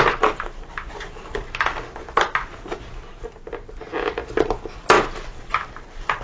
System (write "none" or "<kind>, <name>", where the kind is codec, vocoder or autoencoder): none